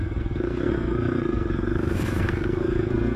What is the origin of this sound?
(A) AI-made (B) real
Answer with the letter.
A